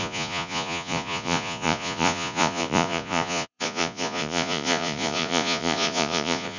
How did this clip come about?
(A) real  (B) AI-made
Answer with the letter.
B